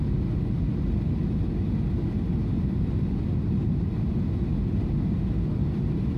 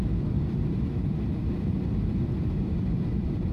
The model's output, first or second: second